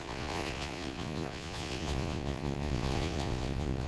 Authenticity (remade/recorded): remade